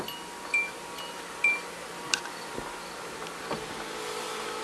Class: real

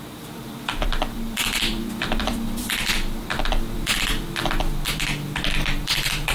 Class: fake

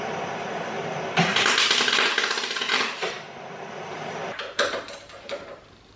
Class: fake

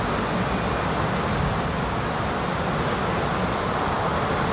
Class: real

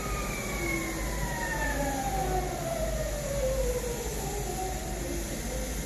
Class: real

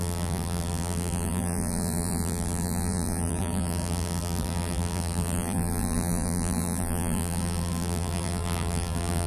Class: fake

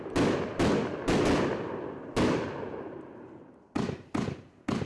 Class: real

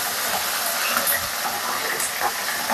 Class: real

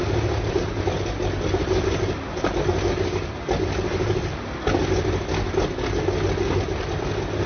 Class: real